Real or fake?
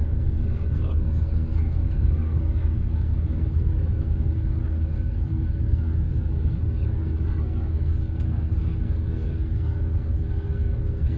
fake